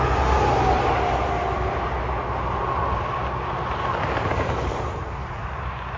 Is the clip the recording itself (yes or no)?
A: yes